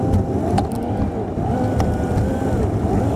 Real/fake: real